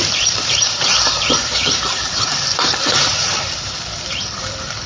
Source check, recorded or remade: remade